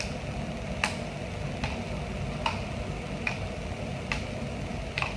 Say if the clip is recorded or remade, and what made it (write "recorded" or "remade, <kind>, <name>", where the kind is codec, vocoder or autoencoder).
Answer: recorded